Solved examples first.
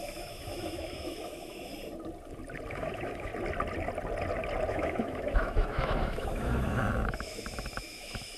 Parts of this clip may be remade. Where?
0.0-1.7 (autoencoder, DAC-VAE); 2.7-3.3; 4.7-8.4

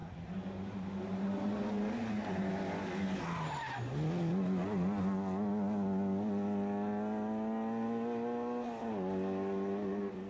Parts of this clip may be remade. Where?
0.0-2.5 (vocoder, BigVGAN v2)

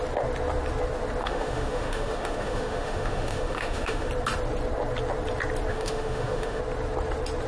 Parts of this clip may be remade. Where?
1.2-4.1 (autoencoder, DAC-VAE); 5.7-6.6